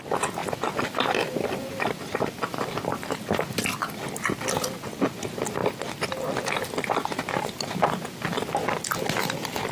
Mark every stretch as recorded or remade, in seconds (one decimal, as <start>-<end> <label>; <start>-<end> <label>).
0.0-9.7 recorded